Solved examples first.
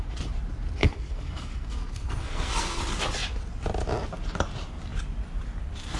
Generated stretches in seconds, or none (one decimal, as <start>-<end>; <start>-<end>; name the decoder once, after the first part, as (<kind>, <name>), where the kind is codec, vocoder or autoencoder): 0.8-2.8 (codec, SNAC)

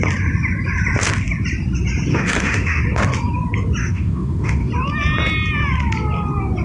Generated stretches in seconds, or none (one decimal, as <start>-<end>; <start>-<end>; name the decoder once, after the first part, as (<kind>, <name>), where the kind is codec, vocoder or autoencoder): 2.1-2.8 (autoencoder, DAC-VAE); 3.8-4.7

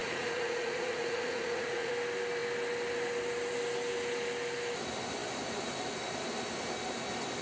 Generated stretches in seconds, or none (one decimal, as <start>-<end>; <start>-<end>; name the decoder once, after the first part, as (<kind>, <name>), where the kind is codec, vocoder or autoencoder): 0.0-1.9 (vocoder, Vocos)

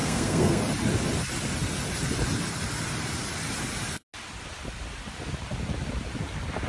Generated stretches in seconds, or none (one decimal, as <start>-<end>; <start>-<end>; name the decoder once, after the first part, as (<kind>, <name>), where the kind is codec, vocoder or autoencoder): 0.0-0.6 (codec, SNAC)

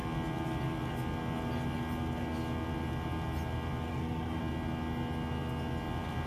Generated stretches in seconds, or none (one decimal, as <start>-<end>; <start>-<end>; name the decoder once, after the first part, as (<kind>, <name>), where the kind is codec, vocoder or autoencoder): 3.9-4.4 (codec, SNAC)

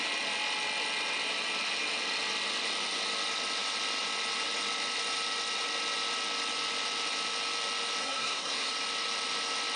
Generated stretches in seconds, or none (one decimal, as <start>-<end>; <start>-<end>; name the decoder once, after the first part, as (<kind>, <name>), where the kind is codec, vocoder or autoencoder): 8.0-8.7 (codec, SNAC)